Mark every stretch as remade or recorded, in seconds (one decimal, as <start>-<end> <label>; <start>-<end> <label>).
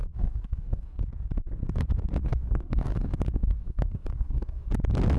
0.0-1.0 remade; 1.0-2.2 recorded; 2.2-4.7 remade; 4.7-5.2 recorded